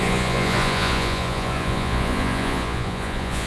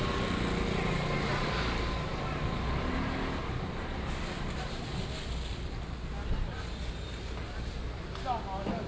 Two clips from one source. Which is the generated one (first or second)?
first